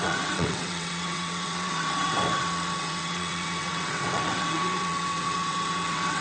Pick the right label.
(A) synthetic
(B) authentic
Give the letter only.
A